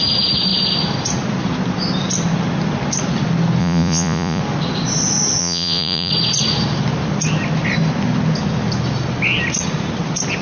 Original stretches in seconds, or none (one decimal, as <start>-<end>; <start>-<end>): 0.0-3.6; 4.4-5.4; 6.1-10.4